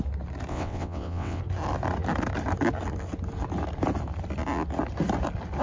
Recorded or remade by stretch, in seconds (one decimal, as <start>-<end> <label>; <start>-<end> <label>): 0.0-0.5 recorded; 0.5-1.4 remade; 1.4-5.6 recorded